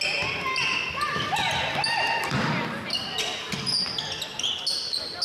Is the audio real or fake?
real